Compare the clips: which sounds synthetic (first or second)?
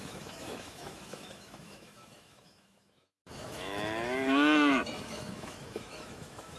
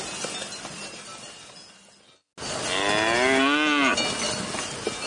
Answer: first